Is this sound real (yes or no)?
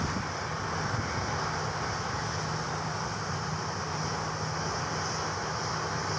yes